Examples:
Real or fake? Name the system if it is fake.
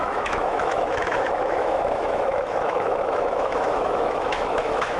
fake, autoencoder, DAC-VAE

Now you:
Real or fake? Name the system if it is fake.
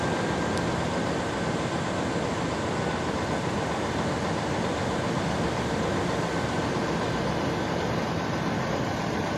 real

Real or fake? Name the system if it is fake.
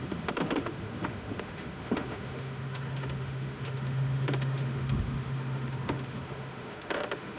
fake, autoencoder, DAC-VAE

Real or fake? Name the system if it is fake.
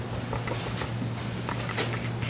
real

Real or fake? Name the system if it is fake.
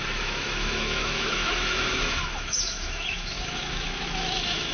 fake, autoencoder, DAC-VAE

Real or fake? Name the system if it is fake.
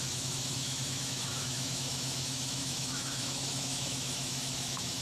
fake, autoencoder, DAC-VAE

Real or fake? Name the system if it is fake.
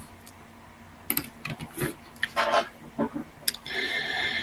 real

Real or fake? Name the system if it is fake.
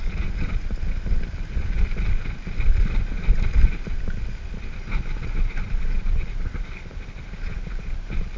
real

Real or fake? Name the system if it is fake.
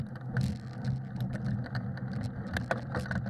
real